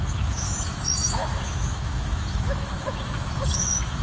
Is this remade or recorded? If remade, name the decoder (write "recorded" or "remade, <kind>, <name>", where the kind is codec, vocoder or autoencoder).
remade, autoencoder, DAC-VAE